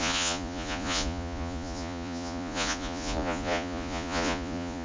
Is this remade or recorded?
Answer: remade